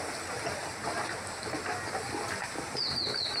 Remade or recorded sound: recorded